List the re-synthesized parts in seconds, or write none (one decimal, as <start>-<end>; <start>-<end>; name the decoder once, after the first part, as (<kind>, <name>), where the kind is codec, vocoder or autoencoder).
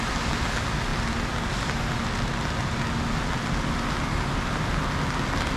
none